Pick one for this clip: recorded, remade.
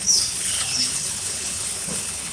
remade